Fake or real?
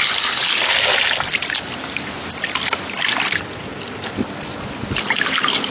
real